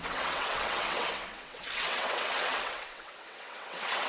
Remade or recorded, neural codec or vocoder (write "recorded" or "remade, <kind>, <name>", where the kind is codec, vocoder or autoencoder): remade, vocoder, WaveNeXt